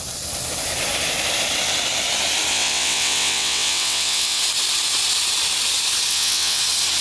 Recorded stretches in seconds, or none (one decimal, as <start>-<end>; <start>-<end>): 0.0-2.5; 4.4-6.1; 6.6-7.0